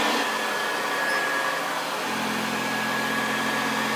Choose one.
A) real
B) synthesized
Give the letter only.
A